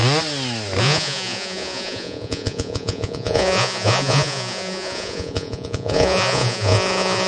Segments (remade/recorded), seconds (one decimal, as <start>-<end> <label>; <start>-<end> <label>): 0.0-0.8 recorded; 0.8-7.3 remade